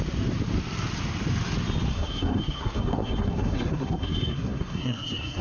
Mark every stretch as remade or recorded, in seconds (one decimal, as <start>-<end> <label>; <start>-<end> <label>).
0.0-1.9 recorded; 1.9-5.4 remade